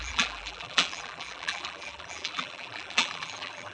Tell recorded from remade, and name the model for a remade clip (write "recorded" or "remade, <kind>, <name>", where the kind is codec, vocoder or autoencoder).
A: remade, vocoder, BigVGAN v2